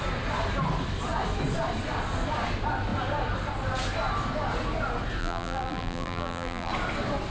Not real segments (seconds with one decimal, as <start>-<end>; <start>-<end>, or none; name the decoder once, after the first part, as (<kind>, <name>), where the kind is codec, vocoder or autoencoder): 5.2-6.7 (vocoder, BigVGAN v2)